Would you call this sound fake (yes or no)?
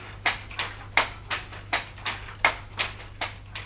no